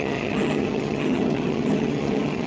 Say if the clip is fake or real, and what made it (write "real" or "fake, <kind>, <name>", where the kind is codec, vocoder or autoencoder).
fake, vocoder, HiFi-GAN